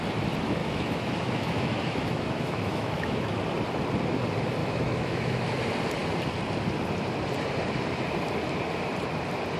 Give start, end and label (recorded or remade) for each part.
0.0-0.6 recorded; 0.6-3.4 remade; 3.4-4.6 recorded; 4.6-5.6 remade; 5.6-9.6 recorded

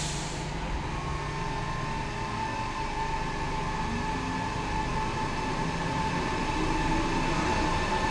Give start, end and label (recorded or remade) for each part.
0.0-8.1 recorded

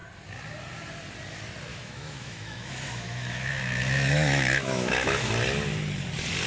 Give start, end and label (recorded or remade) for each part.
0.0-1.7 recorded; 1.7-5.3 remade; 5.3-6.5 recorded

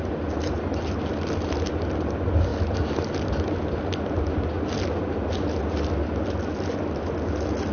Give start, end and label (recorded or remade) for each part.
0.0-7.7 recorded

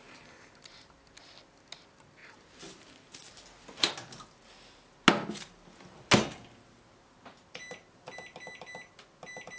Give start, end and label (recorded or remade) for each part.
0.0-9.6 recorded

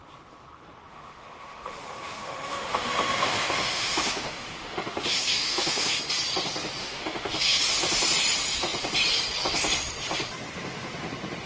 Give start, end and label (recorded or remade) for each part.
0.0-0.9 recorded; 0.9-6.0 remade; 6.0-6.8 recorded; 6.8-7.6 remade; 7.6-11.5 recorded